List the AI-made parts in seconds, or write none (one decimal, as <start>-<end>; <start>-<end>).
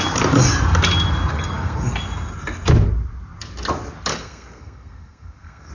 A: 1.3-1.9; 4.1-5.7